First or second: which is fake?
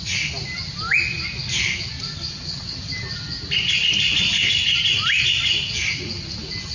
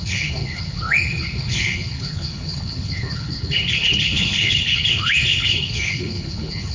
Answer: second